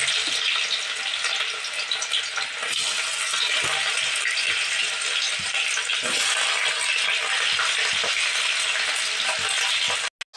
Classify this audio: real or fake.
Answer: real